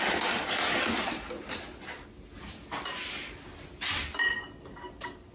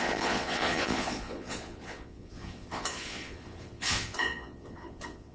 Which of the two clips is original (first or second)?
first